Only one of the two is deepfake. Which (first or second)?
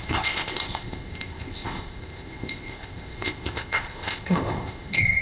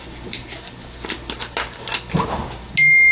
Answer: first